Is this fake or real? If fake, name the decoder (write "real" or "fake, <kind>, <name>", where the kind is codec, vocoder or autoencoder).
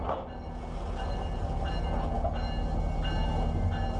real